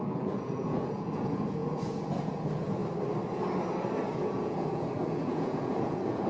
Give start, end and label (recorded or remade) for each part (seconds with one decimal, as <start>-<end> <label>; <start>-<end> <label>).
0.0-2.8 remade; 2.8-4.1 recorded; 4.1-6.3 remade